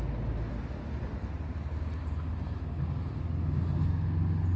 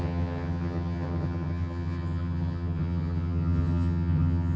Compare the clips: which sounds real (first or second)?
first